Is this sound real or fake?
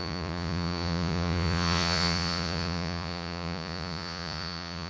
fake